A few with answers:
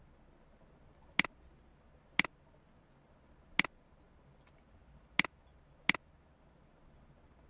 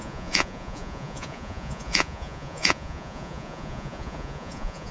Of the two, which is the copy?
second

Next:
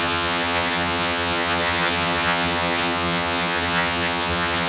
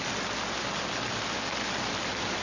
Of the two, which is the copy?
first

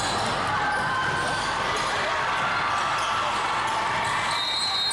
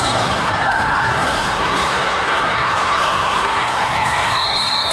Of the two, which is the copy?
second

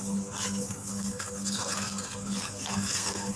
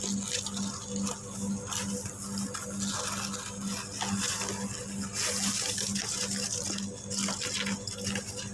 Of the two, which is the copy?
first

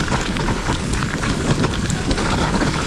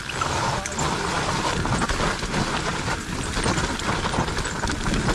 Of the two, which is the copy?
first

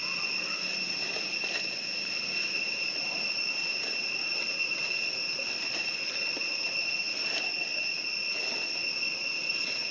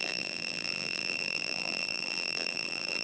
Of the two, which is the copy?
second